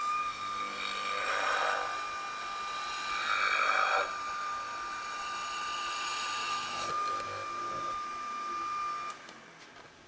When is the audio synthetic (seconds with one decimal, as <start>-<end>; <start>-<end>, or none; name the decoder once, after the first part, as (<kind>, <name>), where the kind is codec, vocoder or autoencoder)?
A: 6.4-6.9 (autoencoder, DAC-VAE)